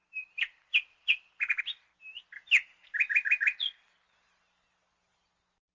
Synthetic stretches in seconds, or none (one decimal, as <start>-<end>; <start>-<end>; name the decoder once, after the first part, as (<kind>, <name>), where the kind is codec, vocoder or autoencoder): none